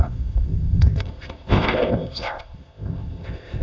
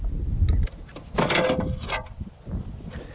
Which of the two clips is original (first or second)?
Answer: second